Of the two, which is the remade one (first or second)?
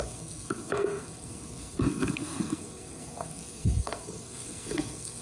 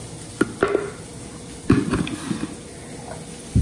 first